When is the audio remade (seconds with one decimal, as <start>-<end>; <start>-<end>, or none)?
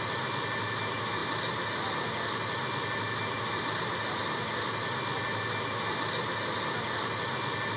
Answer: none